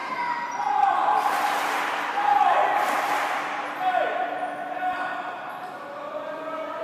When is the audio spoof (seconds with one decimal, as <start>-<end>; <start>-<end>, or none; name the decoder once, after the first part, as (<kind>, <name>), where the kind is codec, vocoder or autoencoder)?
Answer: 2.3-3.2 (vocoder, BigVGAN v2)